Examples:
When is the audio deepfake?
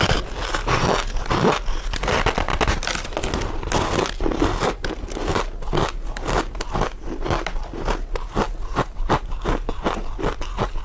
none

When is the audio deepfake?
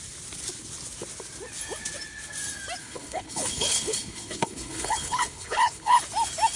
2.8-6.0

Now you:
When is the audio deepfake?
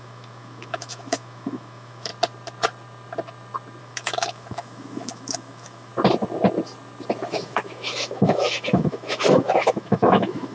0.0-2.1; 3.8-5.9; 7.3-10.5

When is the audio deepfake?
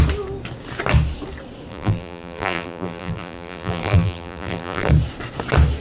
1.7-4.9